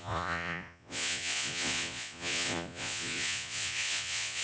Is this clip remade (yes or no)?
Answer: yes